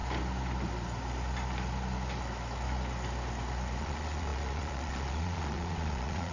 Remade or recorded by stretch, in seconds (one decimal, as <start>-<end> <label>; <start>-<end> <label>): 0.0-3.8 recorded; 3.8-6.3 remade